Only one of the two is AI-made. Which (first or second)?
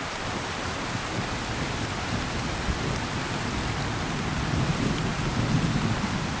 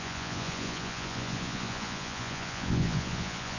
second